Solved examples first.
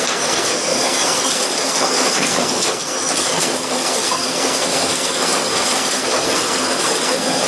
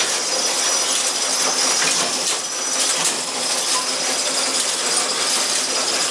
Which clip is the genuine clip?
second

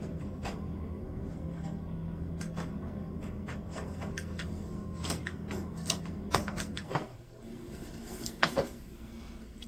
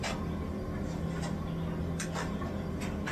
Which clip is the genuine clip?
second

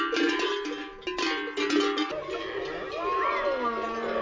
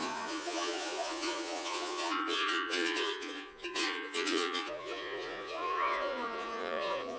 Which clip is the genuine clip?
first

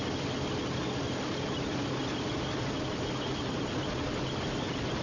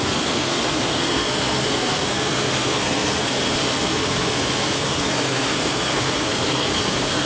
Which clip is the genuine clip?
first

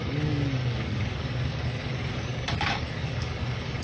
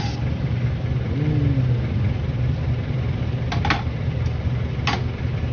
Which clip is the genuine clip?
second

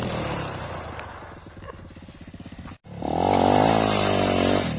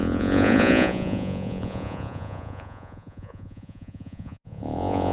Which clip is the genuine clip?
first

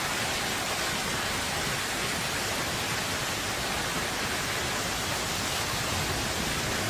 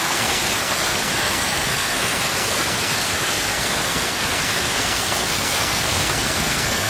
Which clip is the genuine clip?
first